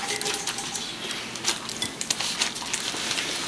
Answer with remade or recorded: recorded